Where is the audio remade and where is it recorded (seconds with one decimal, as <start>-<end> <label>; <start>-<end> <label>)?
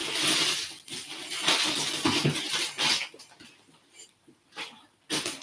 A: 0.0-5.4 recorded